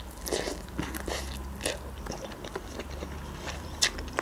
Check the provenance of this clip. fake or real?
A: real